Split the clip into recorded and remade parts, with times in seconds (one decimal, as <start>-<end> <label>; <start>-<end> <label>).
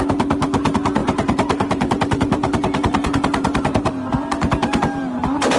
0.0-1.0 recorded; 1.0-3.9 remade; 3.9-5.6 recorded